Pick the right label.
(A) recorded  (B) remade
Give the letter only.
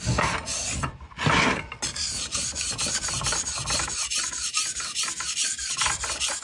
A